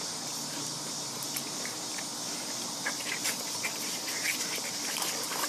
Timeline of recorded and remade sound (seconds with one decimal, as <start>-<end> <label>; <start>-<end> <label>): 0.0-5.5 remade